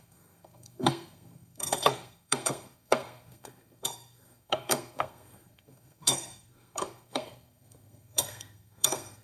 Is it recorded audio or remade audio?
remade